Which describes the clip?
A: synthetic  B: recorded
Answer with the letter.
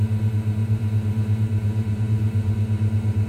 A